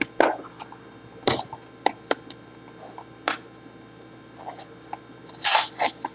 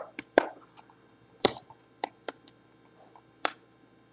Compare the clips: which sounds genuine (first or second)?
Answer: first